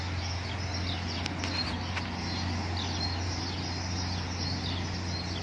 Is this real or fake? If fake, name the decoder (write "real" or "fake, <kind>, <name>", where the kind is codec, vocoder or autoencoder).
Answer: real